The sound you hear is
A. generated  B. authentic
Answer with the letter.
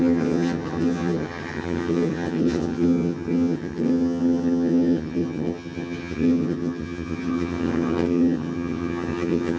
A